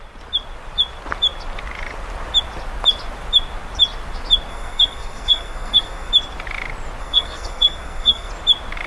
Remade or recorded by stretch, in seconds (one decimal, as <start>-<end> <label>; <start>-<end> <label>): 0.0-4.5 recorded; 4.5-6.1 remade; 6.1-7.0 recorded; 7.0-8.3 remade; 8.3-8.9 recorded

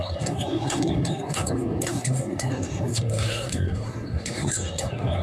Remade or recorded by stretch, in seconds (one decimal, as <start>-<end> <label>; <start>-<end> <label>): 0.0-5.2 remade